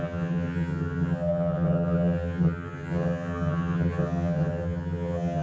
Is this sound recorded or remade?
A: remade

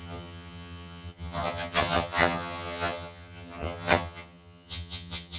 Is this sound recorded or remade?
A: remade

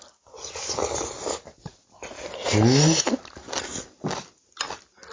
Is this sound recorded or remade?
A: recorded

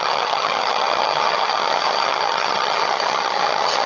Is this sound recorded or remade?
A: remade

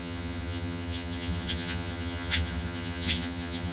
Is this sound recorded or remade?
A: remade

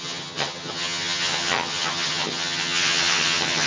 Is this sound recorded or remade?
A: remade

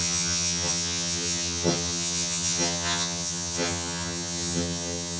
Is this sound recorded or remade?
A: remade